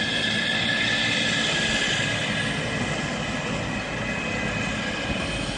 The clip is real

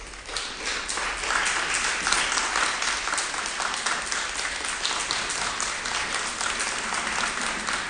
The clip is real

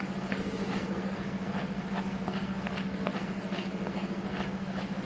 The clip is fake